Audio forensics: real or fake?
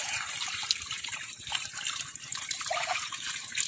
fake